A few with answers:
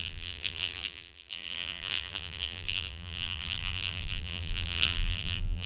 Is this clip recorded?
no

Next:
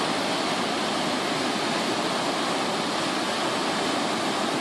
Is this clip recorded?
yes